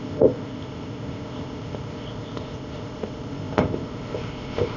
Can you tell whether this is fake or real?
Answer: fake